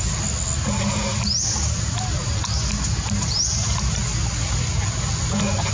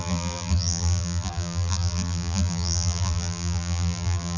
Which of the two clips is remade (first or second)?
second